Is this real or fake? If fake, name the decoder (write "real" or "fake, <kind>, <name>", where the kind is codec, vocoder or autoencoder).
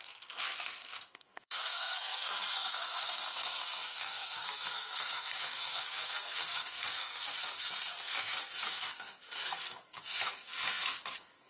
fake, codec, SNAC